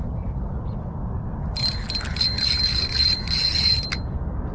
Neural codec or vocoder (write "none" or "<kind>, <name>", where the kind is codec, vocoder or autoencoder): none